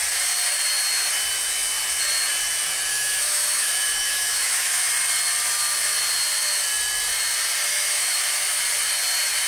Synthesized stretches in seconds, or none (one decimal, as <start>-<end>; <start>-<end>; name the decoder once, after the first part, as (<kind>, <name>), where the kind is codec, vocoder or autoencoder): 2.9-4.9 (autoencoder, DAC-VAE); 7.7-8.2